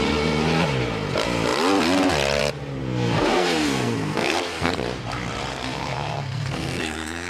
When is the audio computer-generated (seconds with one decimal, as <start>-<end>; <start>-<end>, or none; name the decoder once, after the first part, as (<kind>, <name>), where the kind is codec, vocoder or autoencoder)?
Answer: 2.8-4.7 (codec, SNAC); 5.5-7.3

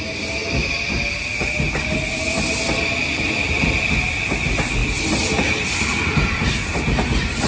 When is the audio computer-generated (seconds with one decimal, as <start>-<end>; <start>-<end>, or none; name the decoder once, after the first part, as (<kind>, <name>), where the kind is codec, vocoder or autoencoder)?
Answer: none

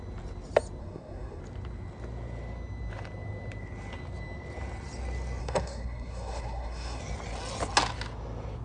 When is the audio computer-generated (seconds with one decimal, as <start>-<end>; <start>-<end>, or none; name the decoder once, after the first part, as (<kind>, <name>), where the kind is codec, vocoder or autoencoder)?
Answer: 0.8-1.4 (codec, SNAC); 5.4-7.0

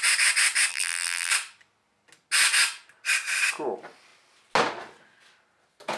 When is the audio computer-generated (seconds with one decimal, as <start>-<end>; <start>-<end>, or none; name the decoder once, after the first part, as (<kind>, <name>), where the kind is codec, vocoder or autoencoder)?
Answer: 0.7-1.3 (vocoder, BigVGAN v2)

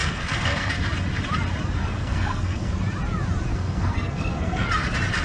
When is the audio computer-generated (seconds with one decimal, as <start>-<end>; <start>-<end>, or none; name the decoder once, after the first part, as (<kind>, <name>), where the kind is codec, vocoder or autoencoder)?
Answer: 0.0-0.7 (codec, SNAC); 1.8-2.8; 3.5-4.7

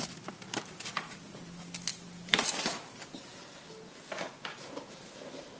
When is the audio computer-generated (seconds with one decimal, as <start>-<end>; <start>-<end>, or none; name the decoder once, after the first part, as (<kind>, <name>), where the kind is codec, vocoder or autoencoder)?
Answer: 1.9-3.1 (vocoder, BigVGAN v2); 4.2-5.6

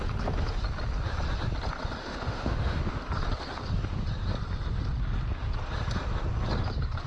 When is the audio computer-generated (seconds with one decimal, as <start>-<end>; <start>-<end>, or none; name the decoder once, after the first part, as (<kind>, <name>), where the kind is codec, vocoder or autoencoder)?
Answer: 2.0-2.8 (autoencoder, DAC-VAE)

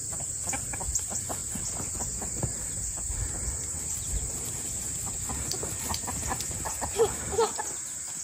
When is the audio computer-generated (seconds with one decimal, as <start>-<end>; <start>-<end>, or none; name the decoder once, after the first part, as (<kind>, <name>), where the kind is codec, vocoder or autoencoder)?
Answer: none